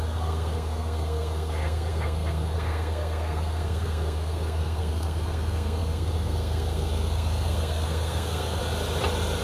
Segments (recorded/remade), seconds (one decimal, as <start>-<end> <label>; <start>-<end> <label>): 0.0-8.6 remade; 8.6-9.4 recorded